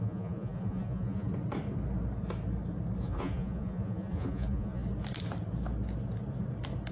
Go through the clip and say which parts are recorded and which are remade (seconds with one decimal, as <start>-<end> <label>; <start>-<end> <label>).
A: 0.0-1.3 remade; 1.3-3.0 recorded; 3.0-4.8 remade; 4.8-6.9 recorded